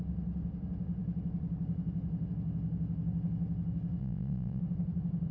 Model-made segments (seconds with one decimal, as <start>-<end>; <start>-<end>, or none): 4.0-4.6